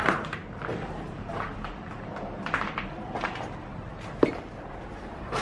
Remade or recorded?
remade